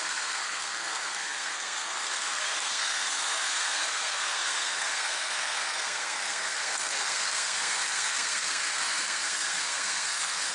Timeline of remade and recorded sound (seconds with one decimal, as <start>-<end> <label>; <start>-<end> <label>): 0.0-10.5 remade

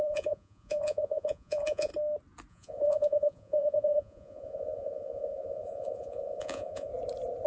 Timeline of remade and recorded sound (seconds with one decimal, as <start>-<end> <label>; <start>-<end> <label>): 0.0-1.9 remade; 1.9-2.5 recorded; 2.5-6.9 remade; 6.9-7.5 recorded

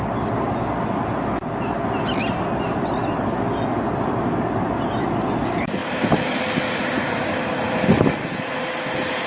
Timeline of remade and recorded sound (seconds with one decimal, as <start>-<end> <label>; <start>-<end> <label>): 0.0-9.3 recorded

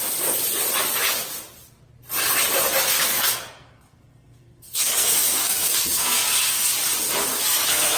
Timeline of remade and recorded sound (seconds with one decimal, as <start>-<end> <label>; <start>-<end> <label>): 0.0-3.1 recorded; 3.1-6.7 remade; 6.7-7.3 recorded; 7.3-8.0 remade